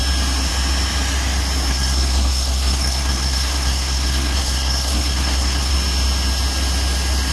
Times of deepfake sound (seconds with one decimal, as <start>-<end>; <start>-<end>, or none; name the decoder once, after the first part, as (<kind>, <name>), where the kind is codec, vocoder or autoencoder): 1.7-5.7 (codec, SNAC)